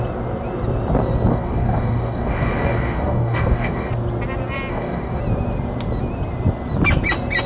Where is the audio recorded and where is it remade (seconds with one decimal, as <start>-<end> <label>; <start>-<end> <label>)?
0.0-1.3 recorded; 1.3-3.9 remade; 3.9-4.7 recorded; 4.7-5.2 remade; 5.2-7.5 recorded